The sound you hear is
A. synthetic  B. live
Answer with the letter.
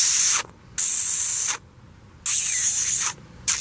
B